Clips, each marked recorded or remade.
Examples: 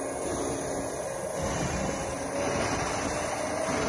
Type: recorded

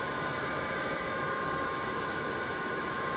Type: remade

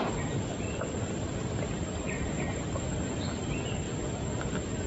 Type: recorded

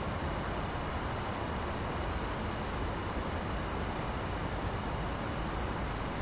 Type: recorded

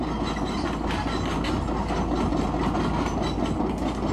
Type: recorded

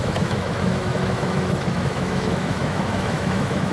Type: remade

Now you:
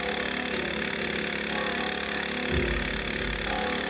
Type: recorded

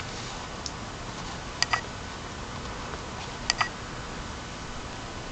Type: recorded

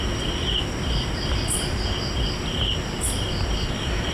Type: recorded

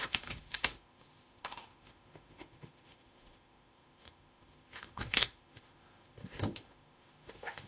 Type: remade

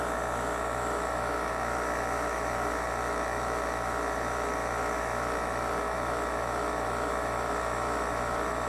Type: remade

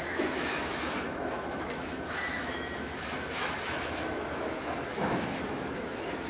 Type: remade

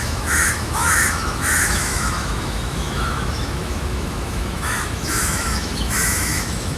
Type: remade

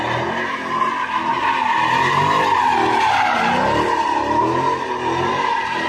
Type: recorded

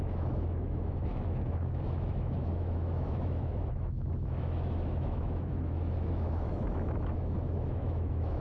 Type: remade